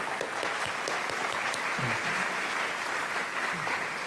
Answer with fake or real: real